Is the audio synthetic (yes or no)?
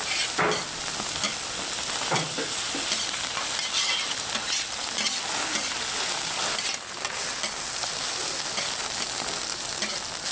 no